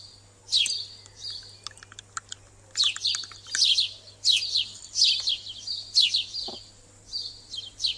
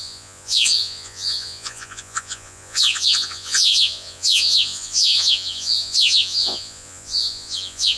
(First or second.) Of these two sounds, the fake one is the second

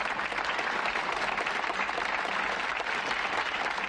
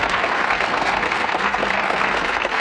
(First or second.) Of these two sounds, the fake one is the second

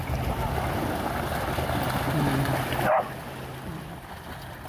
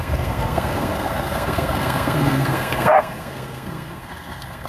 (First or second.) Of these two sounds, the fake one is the second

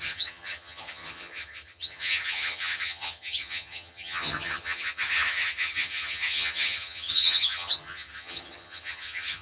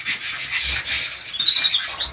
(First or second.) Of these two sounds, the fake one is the first